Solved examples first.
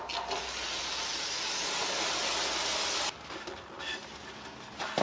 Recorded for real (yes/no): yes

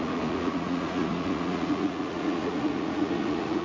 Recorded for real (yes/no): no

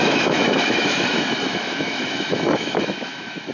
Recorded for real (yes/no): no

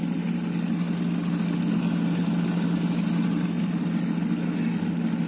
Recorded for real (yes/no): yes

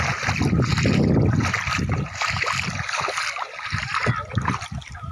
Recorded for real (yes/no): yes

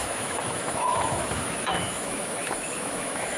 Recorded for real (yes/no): no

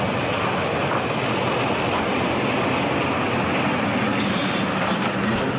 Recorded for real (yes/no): yes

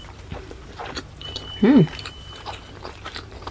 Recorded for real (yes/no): no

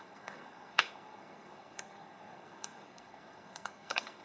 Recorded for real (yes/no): no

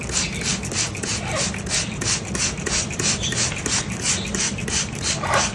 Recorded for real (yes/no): no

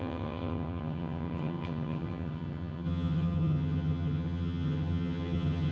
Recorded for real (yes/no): no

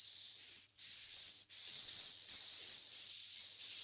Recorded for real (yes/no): no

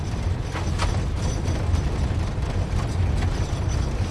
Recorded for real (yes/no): no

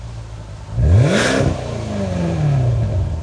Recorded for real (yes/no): yes